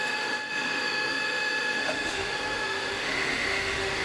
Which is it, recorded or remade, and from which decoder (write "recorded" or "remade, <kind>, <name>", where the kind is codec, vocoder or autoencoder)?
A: remade, autoencoder, DAC-VAE